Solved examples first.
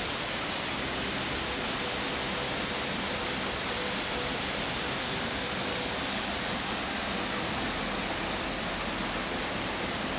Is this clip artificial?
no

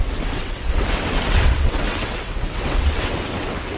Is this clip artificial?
yes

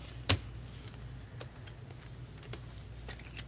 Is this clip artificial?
no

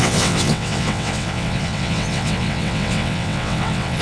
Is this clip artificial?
yes